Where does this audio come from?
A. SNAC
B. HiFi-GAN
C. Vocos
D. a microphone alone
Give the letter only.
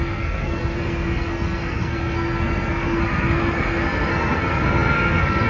A